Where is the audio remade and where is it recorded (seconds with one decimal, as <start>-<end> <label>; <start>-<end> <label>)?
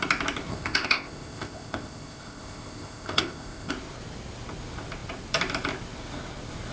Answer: 0.0-0.5 recorded; 0.5-3.7 remade; 3.7-6.7 recorded